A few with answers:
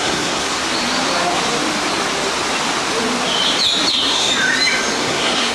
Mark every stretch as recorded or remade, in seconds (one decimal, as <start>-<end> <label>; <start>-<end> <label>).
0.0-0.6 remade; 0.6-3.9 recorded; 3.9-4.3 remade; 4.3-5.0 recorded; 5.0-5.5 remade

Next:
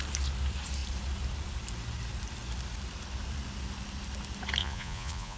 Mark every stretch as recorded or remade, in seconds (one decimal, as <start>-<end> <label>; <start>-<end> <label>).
0.0-4.6 recorded; 4.6-5.4 remade

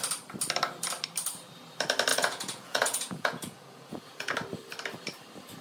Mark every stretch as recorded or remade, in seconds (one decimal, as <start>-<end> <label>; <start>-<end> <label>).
0.0-2.1 recorded; 2.1-4.3 remade; 4.3-5.6 recorded

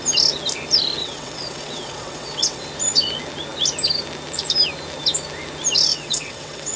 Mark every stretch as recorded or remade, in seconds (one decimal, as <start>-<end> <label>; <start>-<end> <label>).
0.0-1.0 recorded; 1.0-2.7 remade; 2.7-5.9 recorded; 5.9-6.8 remade

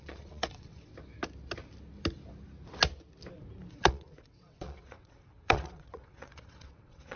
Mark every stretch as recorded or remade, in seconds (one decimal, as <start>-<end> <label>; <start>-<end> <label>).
0.0-0.9 remade; 0.9-3.7 recorded; 3.7-7.2 remade

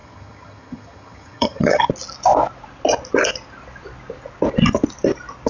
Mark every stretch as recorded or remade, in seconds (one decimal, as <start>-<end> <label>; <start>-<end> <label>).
0.0-1.9 remade; 1.9-5.5 recorded